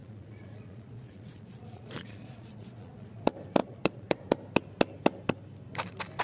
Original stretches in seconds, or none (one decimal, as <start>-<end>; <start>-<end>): 3.2-3.6; 4.2-6.2